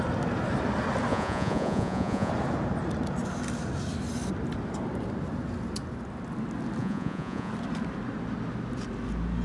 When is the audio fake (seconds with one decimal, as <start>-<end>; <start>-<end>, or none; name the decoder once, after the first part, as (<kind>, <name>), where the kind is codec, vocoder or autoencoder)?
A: 1.1-2.3 (vocoder, Vocos); 6.8-7.5